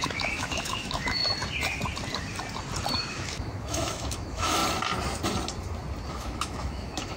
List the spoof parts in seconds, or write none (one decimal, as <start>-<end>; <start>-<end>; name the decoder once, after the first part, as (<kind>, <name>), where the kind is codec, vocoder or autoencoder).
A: 0.0-1.2 (autoencoder, DAC-VAE); 3.1-4.6; 6.1-7.2